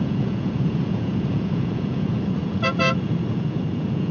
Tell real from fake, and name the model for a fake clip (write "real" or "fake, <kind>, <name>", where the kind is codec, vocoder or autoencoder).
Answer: fake, vocoder, Vocos